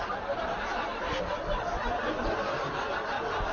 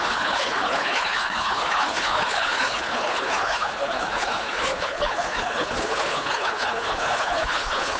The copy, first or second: second